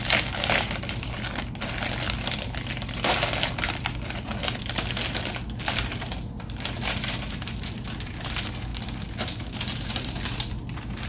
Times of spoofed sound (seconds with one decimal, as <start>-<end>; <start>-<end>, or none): none